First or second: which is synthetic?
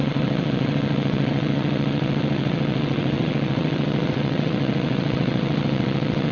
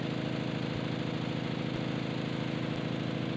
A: first